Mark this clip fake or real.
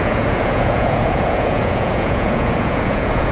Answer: fake